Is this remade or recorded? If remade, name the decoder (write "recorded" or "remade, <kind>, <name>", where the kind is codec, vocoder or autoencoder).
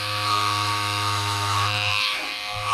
remade, autoencoder, DAC-VAE